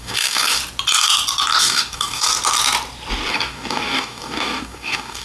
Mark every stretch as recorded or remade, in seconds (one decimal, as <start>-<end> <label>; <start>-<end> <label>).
0.0-0.6 remade; 0.6-1.6 recorded; 1.6-2.3 remade; 2.3-3.3 recorded; 3.3-5.2 remade